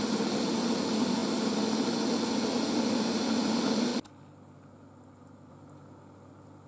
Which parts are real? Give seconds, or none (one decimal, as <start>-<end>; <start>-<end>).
0.0-6.7